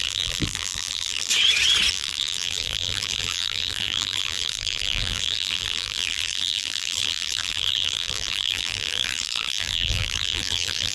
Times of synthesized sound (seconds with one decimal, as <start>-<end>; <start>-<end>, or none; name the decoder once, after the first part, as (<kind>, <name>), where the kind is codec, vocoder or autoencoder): 0.0-1.3 (vocoder, BigVGAN v2); 1.9-10.9